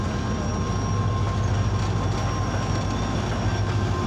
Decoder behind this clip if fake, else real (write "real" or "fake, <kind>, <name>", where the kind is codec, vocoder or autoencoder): real